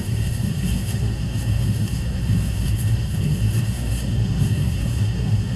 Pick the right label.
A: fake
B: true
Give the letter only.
A